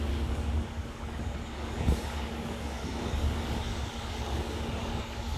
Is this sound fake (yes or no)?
yes